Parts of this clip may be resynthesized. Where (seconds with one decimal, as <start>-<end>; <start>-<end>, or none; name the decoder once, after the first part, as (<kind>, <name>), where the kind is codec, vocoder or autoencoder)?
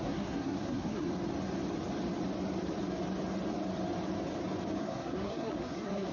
0.0-1.1 (codec, SNAC); 4.8-6.1